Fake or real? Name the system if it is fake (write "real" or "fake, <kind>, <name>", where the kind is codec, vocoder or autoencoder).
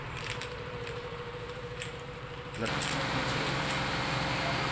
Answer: fake, vocoder, BigVGAN v2